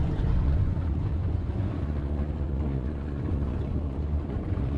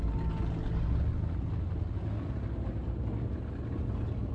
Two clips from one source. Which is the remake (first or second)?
first